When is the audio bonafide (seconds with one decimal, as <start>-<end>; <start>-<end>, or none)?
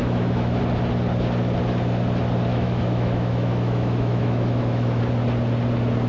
0.6-2.5; 5.0-6.1